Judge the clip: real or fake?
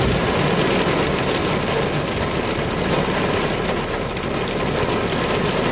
real